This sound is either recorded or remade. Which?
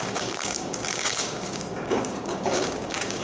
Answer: remade